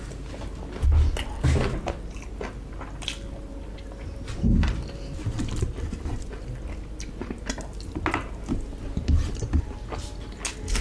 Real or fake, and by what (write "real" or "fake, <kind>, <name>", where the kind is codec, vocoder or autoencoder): real